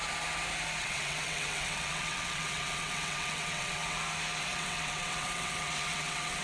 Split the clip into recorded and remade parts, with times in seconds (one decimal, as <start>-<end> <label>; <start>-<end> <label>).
0.0-0.8 recorded; 0.8-3.8 remade; 3.8-4.4 recorded; 4.4-6.4 remade